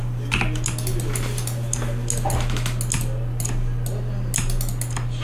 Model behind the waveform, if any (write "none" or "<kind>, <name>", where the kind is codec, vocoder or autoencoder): none